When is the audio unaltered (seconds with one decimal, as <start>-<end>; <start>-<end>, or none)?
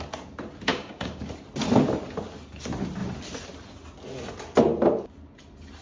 0.0-0.7; 1.2-5.8